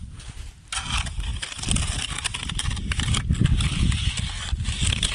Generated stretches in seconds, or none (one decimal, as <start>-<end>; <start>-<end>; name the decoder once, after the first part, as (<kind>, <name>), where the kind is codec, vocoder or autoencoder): none